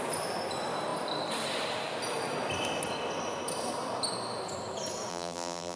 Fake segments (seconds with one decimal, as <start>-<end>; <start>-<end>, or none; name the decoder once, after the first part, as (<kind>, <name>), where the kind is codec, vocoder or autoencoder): 5.1-5.8 (vocoder, BigVGAN v2)